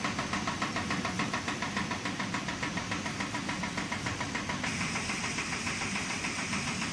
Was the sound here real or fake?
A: real